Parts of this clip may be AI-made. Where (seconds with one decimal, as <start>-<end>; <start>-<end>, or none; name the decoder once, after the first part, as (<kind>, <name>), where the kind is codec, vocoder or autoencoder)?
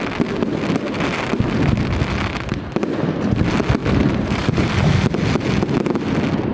3.8-4.7 (vocoder, BigVGAN v2)